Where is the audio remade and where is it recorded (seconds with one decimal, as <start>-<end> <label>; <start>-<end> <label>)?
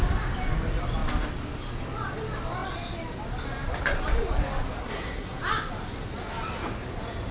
0.0-4.8 recorded; 4.8-5.4 remade; 5.4-7.3 recorded